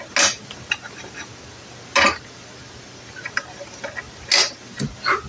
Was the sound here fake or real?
real